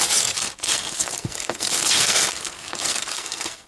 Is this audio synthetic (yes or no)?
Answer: yes